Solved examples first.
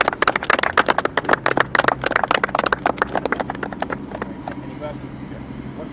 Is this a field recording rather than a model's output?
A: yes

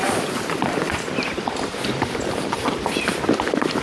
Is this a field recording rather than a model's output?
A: no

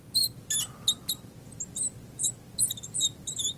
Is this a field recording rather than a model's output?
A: yes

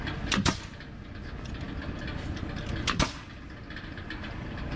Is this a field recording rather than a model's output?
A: yes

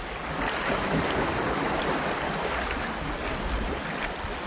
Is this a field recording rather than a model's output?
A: yes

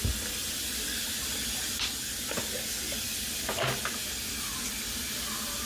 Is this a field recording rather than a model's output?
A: yes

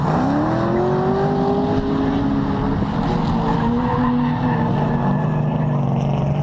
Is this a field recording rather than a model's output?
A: yes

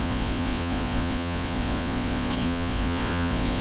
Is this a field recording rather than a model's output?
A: no